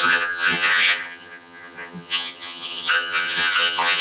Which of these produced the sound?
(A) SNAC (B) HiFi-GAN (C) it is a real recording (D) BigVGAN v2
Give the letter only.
B